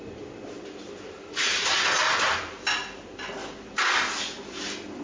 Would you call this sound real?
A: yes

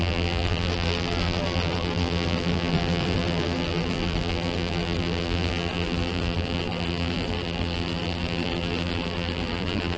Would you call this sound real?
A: no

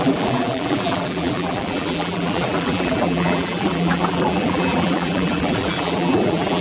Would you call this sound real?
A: no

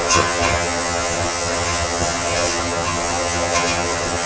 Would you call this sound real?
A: no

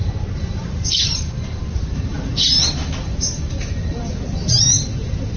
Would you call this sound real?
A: no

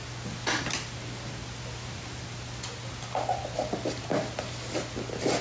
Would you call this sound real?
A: yes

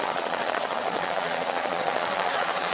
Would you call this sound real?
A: no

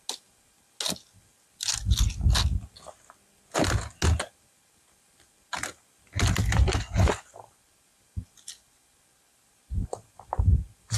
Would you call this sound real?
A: yes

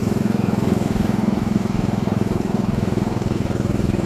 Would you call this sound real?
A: no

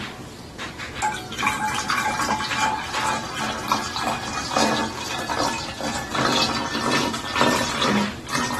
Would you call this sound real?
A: yes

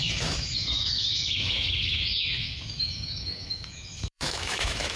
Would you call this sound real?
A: no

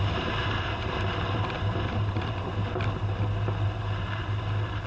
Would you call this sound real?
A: yes